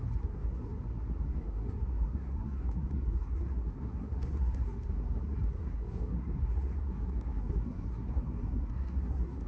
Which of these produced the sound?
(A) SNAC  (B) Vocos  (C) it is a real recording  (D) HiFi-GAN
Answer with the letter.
A